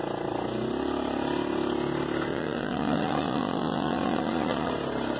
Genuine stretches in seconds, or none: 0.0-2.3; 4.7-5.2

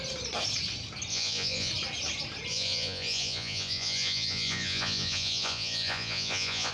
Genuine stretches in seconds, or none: 0.0-1.1; 1.7-2.5

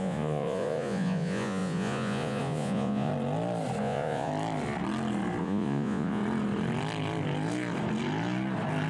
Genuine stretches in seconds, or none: 3.1-3.8; 4.3-5.4; 6.2-8.9

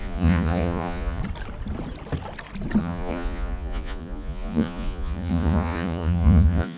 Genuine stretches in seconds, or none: 1.2-2.8

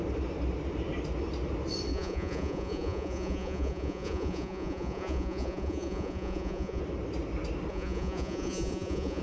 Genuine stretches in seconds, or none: 0.0-1.9; 6.8-7.7

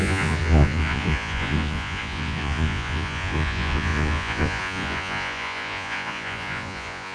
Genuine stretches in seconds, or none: none